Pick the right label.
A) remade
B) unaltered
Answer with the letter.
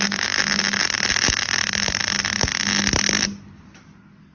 B